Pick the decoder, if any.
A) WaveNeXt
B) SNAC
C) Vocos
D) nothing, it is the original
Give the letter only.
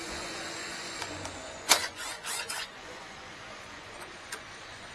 C